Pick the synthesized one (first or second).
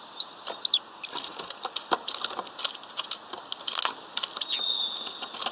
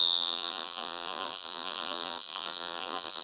second